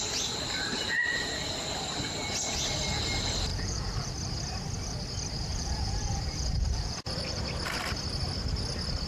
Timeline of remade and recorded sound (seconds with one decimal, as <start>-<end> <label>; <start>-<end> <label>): 0.0-3.5 recorded; 3.5-4.1 remade; 4.1-5.5 recorded; 5.5-7.4 remade; 7.4-9.1 recorded